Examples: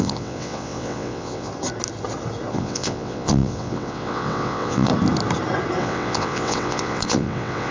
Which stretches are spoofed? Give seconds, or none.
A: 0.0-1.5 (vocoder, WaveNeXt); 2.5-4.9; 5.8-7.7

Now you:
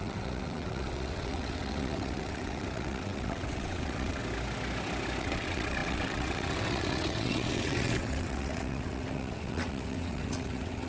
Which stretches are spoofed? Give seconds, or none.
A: 0.0-4.2 (vocoder, WaveNeXt); 5.2-10.9

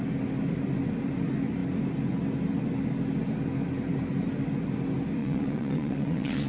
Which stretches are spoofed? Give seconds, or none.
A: 5.2-6.5 (vocoder, WaveNeXt)

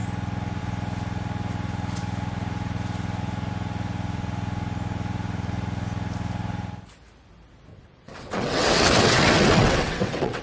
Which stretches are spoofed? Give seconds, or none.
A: 7.7-10.4 (vocoder, WaveNeXt)

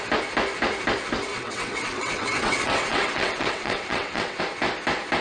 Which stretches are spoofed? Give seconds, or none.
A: 1.3-4.4 (vocoder, WaveNeXt)

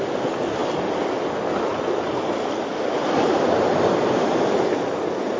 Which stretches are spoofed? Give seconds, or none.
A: none